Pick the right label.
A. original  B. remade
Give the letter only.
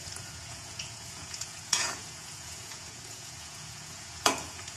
B